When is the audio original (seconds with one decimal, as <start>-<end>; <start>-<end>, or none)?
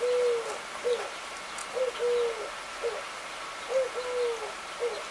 0.0-5.1